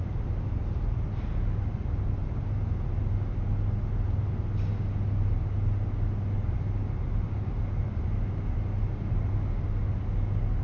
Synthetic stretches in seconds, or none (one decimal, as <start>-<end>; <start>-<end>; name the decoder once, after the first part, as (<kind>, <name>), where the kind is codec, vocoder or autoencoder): 6.4-7.5 (vocoder, BigVGAN v2)